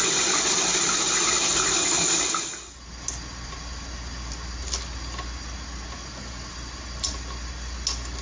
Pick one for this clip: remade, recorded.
recorded